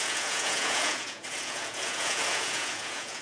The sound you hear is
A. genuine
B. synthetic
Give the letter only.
B